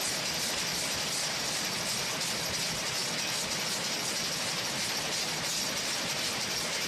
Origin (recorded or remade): recorded